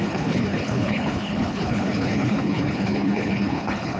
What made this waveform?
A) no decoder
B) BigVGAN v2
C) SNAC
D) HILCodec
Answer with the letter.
D